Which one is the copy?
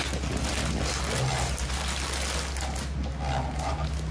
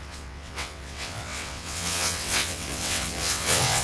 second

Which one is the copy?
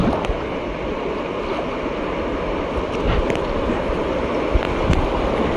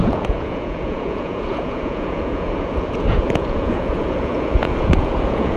second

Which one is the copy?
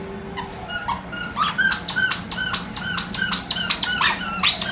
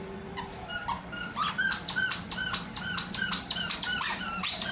second